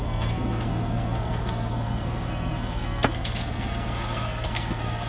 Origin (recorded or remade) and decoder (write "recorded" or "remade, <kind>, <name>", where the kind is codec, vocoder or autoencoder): remade, codec, SNAC